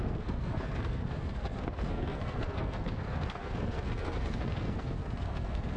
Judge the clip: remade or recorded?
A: remade